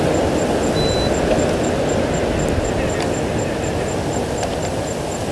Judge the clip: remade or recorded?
recorded